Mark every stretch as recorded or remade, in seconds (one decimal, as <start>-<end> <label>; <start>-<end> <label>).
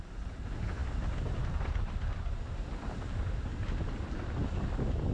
0.0-5.1 recorded